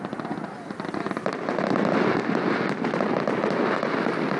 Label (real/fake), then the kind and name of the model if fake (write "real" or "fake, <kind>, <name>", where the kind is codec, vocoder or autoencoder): real